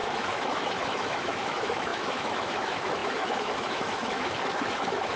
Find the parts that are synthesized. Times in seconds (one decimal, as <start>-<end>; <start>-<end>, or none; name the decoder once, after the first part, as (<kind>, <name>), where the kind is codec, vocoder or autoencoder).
0.0-5.2 (autoencoder, DAC-VAE)